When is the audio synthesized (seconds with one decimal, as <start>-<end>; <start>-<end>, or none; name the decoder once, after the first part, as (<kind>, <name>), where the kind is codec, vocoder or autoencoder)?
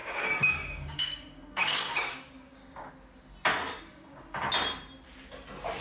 0.0-2.9 (codec, DAC); 3.5-4.2